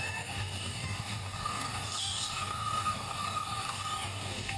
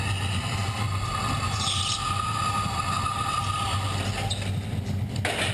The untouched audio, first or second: second